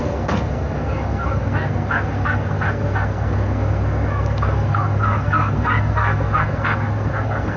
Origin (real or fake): fake